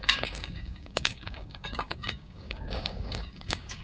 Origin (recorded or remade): remade